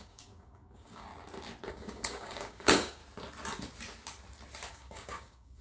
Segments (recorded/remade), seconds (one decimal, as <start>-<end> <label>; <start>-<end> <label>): 0.0-1.1 remade; 1.1-1.7 recorded; 1.7-3.0 remade; 3.0-4.7 recorded; 4.7-5.6 remade